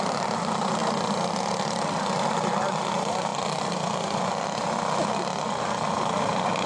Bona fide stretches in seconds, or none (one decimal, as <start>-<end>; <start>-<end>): 0.0-6.7

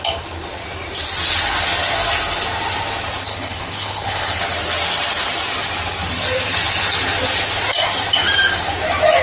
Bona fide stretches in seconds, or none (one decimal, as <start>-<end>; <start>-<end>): 0.0-3.3; 4.4-9.2

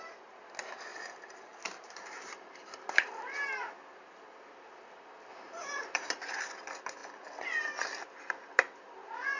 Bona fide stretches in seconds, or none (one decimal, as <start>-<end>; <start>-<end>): 0.0-0.9; 3.7-5.3; 6.1-9.4

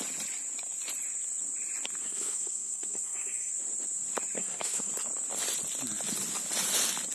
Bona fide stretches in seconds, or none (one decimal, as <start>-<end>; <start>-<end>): 0.0-2.0; 3.5-4.4; 4.9-7.1

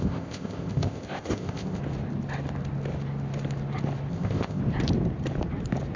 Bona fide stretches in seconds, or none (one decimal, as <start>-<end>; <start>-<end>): 1.8-4.1; 4.6-6.0

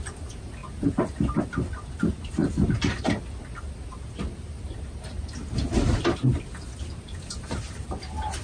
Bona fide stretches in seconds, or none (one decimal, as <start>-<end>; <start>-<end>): 0.0-8.4

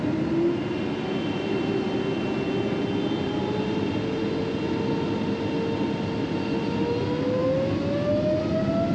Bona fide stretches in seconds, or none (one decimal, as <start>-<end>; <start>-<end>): 0.0-8.9